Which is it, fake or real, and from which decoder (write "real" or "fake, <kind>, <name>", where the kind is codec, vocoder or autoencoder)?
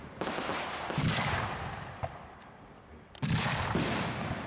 real